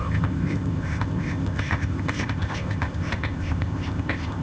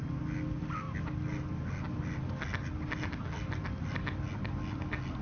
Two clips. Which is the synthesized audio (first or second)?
first